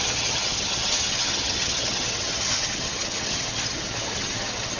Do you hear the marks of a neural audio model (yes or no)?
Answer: yes